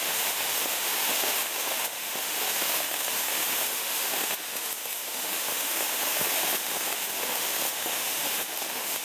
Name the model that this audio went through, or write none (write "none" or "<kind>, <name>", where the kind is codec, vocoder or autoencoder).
autoencoder, DAC-VAE